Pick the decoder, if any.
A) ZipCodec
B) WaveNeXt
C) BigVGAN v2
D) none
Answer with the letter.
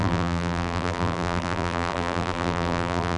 C